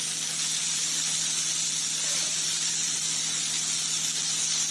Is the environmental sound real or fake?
real